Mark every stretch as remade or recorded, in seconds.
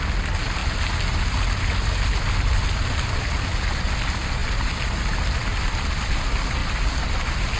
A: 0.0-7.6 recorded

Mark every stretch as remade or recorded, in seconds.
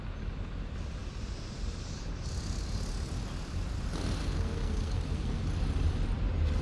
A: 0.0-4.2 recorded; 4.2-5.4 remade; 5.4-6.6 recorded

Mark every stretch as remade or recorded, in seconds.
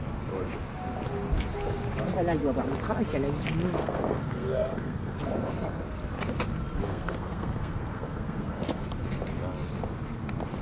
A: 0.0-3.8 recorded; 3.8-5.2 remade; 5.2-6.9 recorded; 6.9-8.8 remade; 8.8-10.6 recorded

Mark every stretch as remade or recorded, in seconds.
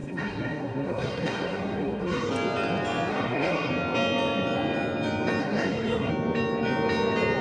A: 0.0-2.3 remade; 2.3-3.1 recorded; 3.1-3.7 remade; 3.7-5.4 recorded; 5.4-6.1 remade; 6.1-7.4 recorded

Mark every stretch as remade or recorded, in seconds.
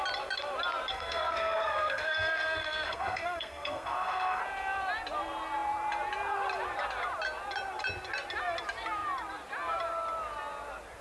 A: 0.0-0.9 recorded; 0.9-4.4 remade; 4.4-11.0 recorded